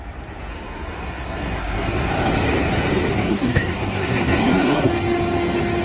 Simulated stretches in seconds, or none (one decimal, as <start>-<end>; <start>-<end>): 0.5-2.1; 3.1-4.9